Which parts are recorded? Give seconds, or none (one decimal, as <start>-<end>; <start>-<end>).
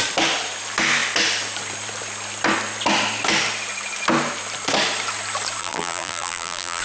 0.0-5.6